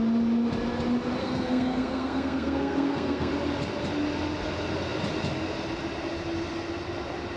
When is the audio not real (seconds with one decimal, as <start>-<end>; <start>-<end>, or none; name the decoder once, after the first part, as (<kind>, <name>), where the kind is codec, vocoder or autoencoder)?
1.2-3.3 (codec, SNAC)